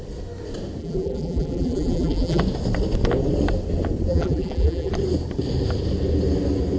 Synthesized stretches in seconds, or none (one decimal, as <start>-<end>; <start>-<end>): 0.8-2.4; 4.1-4.9